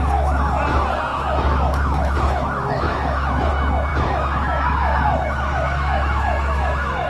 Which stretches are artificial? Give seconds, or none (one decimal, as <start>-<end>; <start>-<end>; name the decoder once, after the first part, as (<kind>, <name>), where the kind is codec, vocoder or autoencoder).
1.1-3.5 (autoencoder, DAC-VAE); 3.9-7.1